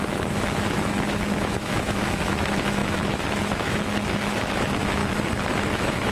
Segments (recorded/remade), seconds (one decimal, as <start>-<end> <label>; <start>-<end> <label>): 0.0-5.0 remade; 5.0-5.5 recorded; 5.5-6.1 remade